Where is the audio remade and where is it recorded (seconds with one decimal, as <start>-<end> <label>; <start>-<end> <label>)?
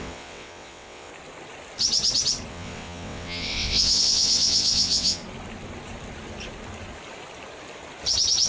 0.0-1.1 remade; 1.1-2.5 recorded; 2.5-5.2 remade; 5.2-8.5 recorded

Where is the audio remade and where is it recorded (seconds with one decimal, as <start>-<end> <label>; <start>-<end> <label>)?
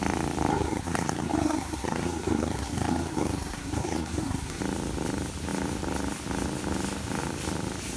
0.0-0.5 recorded; 0.5-4.6 remade; 4.6-8.0 recorded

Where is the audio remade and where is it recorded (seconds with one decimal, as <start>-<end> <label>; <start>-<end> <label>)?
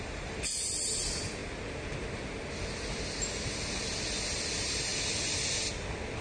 0.0-1.4 remade; 1.4-4.5 recorded; 4.5-4.9 remade; 4.9-6.2 recorded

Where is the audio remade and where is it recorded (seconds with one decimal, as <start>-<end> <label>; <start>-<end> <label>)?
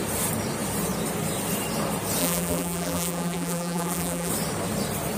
0.0-2.2 recorded; 2.2-4.3 remade; 4.3-5.2 recorded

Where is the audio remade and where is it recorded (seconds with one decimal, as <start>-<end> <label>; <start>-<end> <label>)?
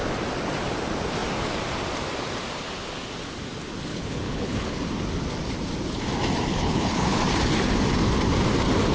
0.0-3.9 recorded; 3.9-4.8 remade; 4.8-6.5 recorded; 6.5-7.2 remade; 7.2-8.9 recorded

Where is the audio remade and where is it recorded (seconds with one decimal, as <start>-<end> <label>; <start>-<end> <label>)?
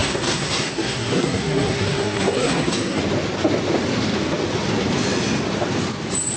0.0-3.0 remade; 3.0-6.4 recorded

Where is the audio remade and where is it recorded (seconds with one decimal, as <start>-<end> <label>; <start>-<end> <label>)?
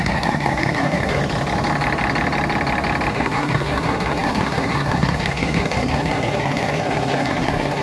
0.0-1.2 remade; 1.2-3.1 recorded; 3.1-7.8 remade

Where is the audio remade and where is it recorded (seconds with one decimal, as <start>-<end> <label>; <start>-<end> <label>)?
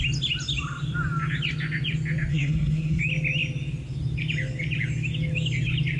0.0-2.3 recorded; 2.3-3.0 remade; 3.0-6.0 recorded